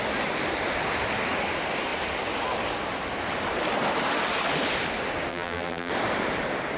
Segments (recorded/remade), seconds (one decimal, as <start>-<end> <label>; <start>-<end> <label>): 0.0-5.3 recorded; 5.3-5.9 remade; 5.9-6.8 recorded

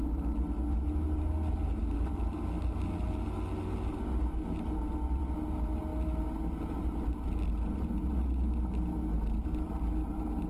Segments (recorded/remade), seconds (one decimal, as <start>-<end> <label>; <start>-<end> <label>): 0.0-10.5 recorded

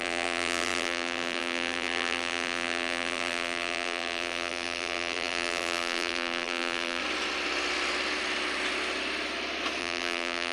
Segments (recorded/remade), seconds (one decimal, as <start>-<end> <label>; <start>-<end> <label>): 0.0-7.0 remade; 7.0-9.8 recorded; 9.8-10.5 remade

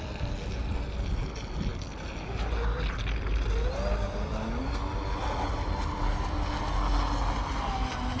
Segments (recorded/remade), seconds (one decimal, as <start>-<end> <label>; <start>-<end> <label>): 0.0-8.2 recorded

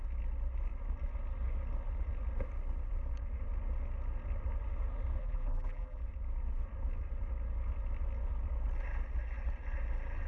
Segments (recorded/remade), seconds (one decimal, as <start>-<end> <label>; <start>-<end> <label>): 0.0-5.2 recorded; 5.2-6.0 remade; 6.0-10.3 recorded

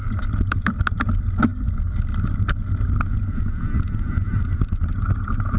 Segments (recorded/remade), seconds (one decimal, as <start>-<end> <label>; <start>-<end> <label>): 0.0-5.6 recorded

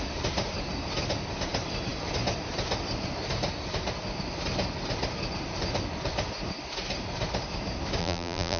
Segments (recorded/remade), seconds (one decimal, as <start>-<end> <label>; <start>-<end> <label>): 0.0-8.0 recorded; 8.0-8.6 remade